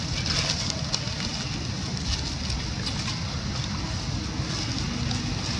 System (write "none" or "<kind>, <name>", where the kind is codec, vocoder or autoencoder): none